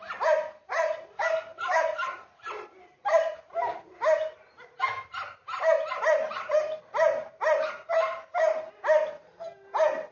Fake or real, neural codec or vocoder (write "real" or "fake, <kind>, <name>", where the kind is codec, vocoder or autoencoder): real